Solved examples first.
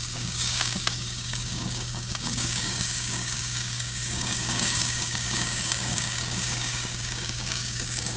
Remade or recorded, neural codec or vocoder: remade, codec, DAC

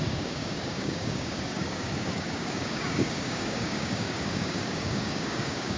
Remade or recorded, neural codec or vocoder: remade, codec, DAC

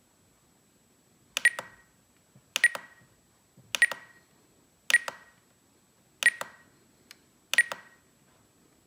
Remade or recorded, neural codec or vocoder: recorded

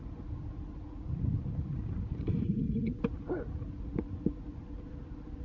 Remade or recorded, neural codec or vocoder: recorded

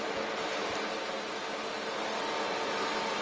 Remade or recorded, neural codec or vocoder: recorded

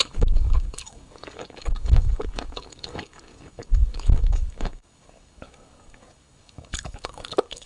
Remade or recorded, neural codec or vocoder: remade, codec, DAC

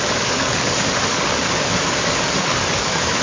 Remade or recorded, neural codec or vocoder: remade, codec, DAC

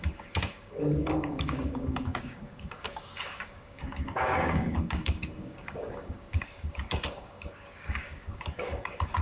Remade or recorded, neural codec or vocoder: remade, codec, DAC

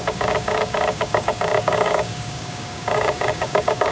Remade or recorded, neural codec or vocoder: remade, codec, DAC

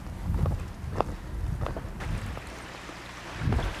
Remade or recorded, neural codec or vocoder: recorded